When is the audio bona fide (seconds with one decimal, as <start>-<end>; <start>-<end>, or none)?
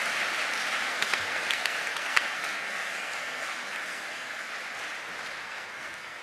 0.0-0.8; 4.5-5.4